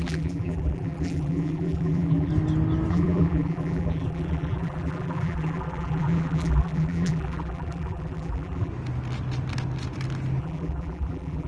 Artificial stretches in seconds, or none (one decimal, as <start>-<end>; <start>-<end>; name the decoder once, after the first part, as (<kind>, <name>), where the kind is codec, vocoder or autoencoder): 0.0-2.3 (vocoder, BigVGAN v2); 2.9-8.7; 10.4-11.5